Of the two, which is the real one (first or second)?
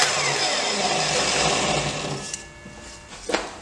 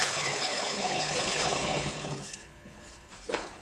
first